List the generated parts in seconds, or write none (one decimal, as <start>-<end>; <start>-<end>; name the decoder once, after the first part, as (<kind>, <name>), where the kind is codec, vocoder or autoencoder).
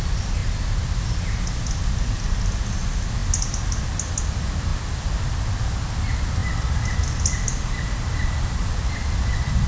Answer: none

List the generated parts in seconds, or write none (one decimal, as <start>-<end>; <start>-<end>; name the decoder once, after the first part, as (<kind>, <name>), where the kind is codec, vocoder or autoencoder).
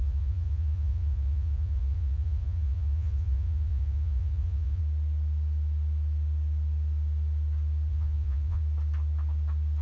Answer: 0.0-4.8 (vocoder, Vocos); 7.9-8.6